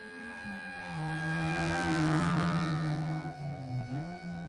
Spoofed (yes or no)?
yes